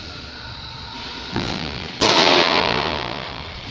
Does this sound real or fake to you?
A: fake